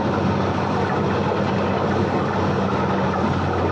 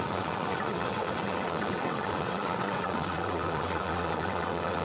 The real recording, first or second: first